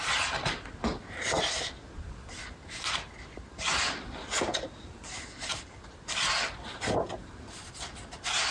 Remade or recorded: recorded